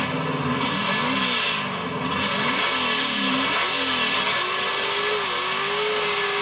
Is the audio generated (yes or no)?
no